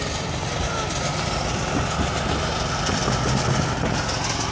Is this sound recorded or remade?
recorded